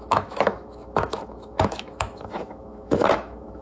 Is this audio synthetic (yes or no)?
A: yes